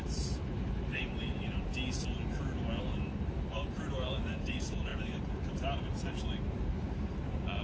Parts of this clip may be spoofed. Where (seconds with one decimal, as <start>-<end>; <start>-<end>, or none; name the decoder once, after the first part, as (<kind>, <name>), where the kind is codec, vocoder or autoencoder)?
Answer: 0.0-1.7 (vocoder, BigVGAN v2); 2.8-7.6